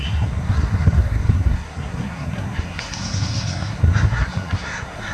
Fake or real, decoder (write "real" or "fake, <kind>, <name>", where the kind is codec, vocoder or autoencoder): fake, codec, SNAC